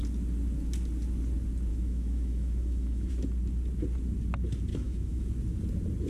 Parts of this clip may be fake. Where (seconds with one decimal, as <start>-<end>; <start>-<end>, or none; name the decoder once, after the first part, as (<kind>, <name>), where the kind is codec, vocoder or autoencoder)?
1.7-3.1 (autoencoder, DAC-VAE); 4.7-5.3